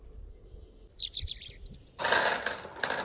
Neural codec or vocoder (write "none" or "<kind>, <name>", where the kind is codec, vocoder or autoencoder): none